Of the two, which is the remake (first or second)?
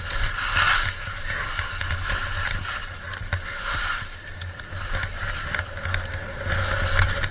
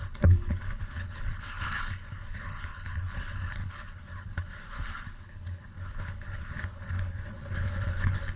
second